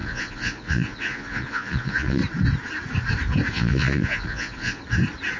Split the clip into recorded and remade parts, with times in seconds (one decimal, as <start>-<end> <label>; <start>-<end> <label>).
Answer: 0.0-2.2 remade; 2.2-3.5 recorded; 3.5-4.8 remade; 4.8-5.4 recorded